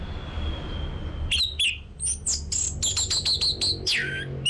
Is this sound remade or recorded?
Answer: recorded